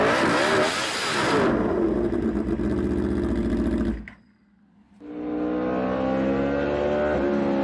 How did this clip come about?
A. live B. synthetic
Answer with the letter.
A